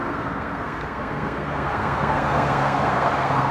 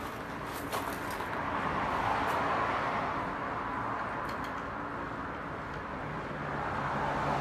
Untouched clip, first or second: second